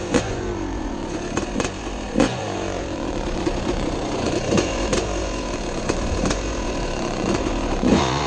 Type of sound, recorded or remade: remade